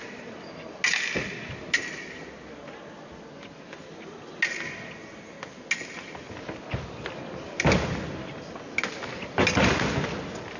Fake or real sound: real